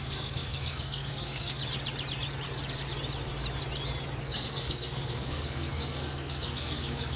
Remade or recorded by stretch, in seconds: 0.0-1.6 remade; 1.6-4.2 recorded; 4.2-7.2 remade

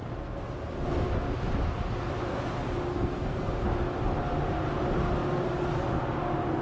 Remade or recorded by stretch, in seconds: 0.0-0.5 remade; 0.5-2.9 recorded; 2.9-3.5 remade; 3.5-6.6 recorded

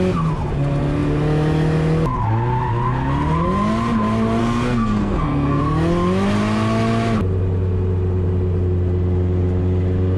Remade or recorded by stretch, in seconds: 0.0-4.4 recorded; 4.4-5.6 remade; 5.6-10.2 recorded

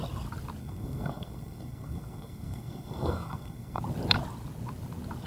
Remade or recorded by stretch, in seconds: 0.0-0.6 recorded; 0.6-3.8 remade; 3.8-5.3 recorded

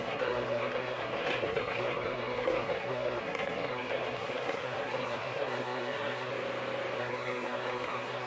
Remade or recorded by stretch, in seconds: 0.0-6.3 remade; 6.3-7.0 recorded; 7.0-8.3 remade